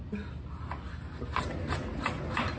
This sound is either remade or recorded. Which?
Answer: recorded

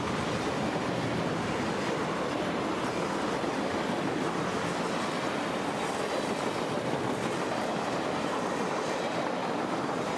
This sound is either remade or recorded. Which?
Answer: recorded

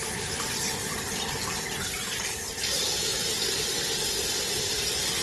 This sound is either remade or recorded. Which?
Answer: remade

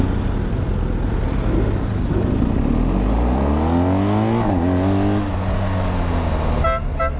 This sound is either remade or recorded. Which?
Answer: recorded